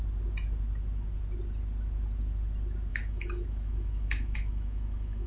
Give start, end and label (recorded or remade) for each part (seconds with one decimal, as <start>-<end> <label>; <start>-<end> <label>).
0.0-2.9 recorded; 2.9-5.3 remade